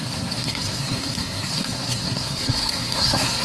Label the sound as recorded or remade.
remade